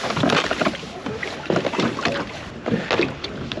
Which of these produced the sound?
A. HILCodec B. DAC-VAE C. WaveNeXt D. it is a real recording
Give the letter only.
D